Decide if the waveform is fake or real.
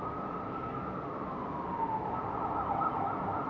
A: real